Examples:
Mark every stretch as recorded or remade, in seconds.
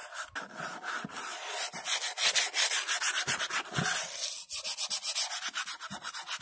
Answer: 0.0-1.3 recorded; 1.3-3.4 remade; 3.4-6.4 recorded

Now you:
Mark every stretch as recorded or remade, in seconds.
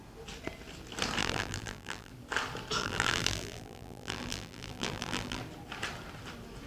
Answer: 0.0-1.2 recorded; 1.2-2.1 remade; 2.1-2.8 recorded; 2.8-5.4 remade; 5.4-6.7 recorded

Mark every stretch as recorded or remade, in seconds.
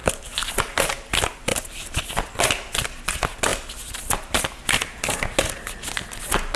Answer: 0.0-0.6 remade; 0.6-1.5 recorded; 1.5-2.1 remade; 2.1-3.5 recorded; 3.5-4.4 remade; 4.4-6.6 recorded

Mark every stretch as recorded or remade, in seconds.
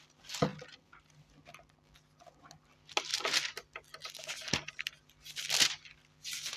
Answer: 0.0-6.6 recorded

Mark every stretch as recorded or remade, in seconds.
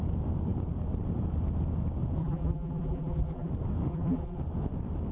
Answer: 0.0-2.2 recorded; 2.2-3.5 remade; 3.5-3.9 recorded; 3.9-4.4 remade; 4.4-5.1 recorded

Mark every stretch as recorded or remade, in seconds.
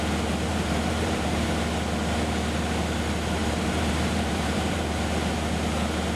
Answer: 0.0-0.5 recorded; 0.5-1.5 remade; 1.5-3.4 recorded; 3.4-4.9 remade; 4.9-6.2 recorded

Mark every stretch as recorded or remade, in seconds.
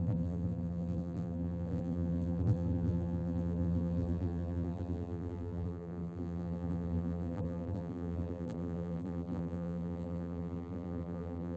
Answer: 0.0-11.6 remade